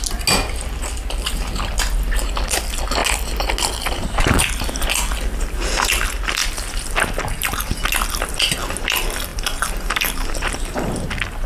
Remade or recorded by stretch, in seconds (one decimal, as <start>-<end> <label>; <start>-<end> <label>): 0.0-9.3 recorded; 9.3-11.1 remade; 11.1-11.5 recorded